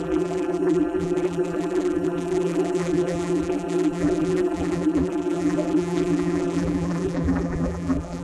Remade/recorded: remade